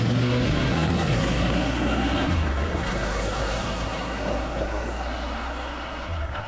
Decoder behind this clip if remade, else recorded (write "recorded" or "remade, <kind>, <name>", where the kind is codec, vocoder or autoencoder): remade, codec, SNAC